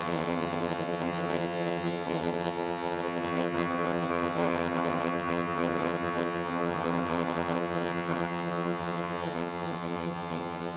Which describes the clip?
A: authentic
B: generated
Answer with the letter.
B